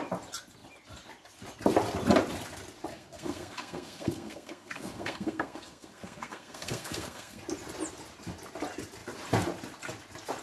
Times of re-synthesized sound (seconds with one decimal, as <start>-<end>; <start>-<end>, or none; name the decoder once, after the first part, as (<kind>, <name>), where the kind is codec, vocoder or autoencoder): 2.9-7.4 (codec, SNAC)